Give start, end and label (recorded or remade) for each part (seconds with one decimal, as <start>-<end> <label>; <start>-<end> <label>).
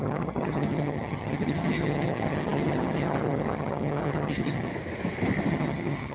0.0-4.7 remade; 4.7-5.5 recorded; 5.5-6.1 remade